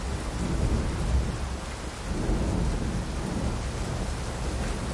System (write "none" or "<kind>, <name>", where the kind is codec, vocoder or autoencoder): none